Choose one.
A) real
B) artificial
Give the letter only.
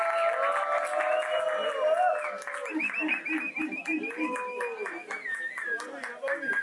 A